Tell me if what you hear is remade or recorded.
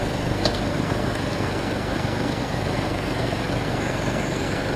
remade